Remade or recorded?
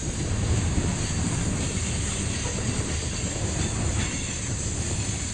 remade